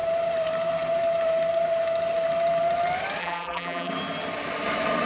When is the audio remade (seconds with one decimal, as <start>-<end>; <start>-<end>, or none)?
3.2-3.9